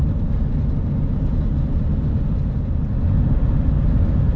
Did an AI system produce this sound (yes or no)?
no